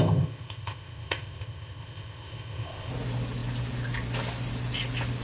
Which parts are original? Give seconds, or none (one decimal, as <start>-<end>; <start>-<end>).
2.9-5.2